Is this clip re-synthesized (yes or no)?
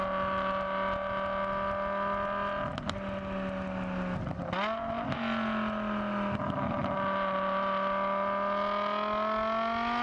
no